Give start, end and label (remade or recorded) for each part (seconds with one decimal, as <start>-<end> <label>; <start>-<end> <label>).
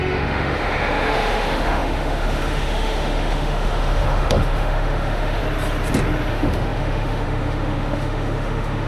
0.0-5.4 remade; 5.4-6.3 recorded; 6.3-8.9 remade